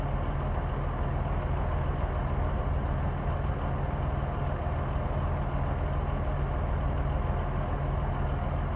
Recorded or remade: recorded